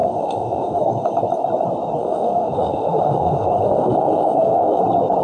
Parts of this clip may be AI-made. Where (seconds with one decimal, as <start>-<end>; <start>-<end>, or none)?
0.0-0.8; 2.0-4.8